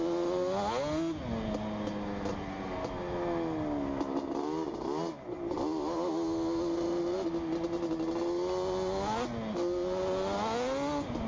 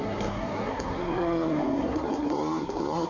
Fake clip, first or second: second